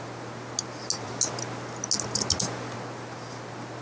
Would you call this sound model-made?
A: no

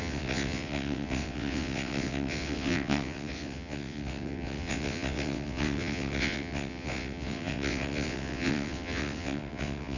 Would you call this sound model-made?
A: yes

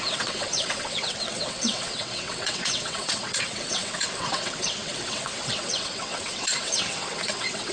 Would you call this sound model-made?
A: yes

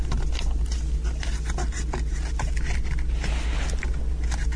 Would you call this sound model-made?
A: no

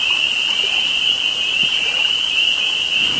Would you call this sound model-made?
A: no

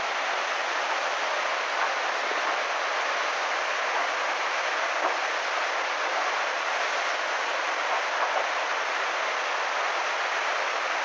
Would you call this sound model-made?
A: no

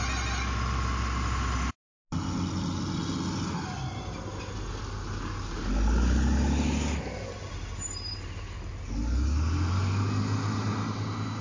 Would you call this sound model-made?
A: no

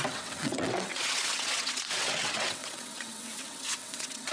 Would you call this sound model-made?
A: yes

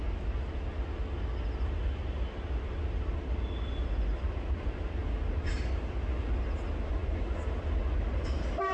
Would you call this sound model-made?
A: no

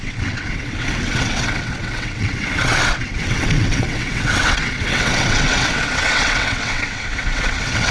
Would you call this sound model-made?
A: yes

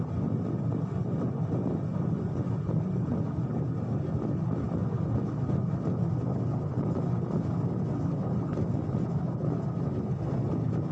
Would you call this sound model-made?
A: no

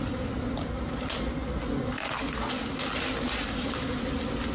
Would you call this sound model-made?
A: no